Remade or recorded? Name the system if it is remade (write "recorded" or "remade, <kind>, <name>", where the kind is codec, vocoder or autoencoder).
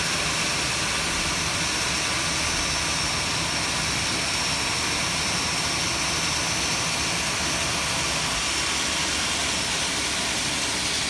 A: recorded